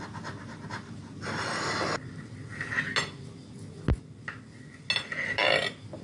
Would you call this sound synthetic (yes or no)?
no